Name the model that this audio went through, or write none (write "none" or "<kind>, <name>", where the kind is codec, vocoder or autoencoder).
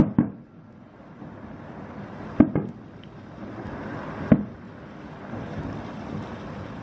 none